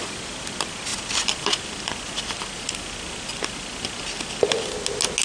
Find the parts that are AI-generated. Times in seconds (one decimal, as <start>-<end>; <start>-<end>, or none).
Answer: none